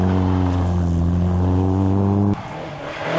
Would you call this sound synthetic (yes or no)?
no